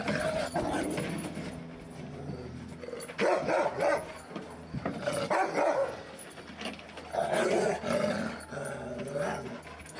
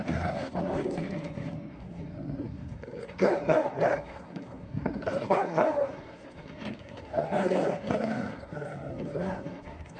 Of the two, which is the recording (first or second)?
first